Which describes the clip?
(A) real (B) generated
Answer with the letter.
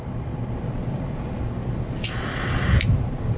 A